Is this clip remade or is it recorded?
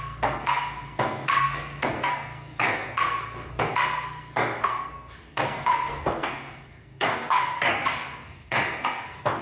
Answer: remade